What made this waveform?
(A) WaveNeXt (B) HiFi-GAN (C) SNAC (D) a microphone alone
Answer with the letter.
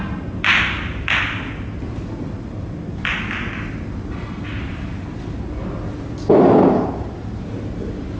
D